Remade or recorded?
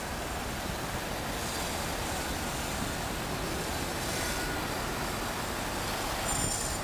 recorded